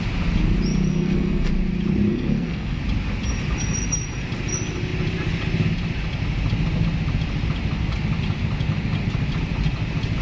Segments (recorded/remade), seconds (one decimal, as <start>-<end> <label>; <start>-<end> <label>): 0.0-0.9 recorded; 0.9-1.5 remade; 1.5-2.1 recorded; 2.1-2.8 remade; 2.8-10.2 recorded